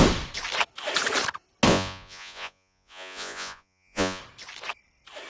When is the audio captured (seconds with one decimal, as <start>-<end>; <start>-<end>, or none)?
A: 0.0-1.7; 4.2-5.3